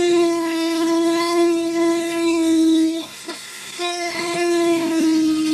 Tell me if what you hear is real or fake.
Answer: fake